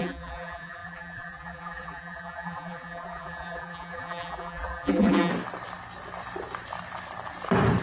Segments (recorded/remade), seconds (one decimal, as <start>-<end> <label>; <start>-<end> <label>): 0.0-5.3 remade; 5.3-7.8 recorded